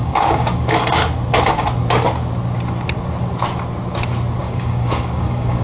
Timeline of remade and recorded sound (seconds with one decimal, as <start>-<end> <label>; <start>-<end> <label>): 0.0-1.0 remade; 1.0-4.4 recorded; 4.4-5.6 remade